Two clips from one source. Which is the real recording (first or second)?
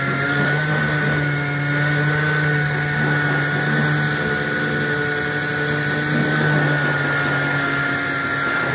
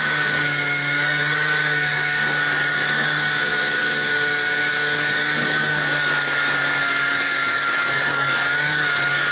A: first